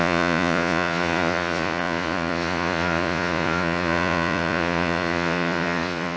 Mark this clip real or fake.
fake